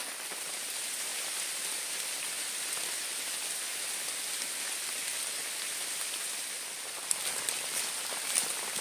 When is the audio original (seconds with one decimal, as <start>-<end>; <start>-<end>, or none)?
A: 0.0-8.8